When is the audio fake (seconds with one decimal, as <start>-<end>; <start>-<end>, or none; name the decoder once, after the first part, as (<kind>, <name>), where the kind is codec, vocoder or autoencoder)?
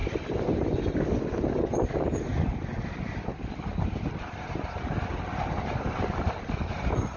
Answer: none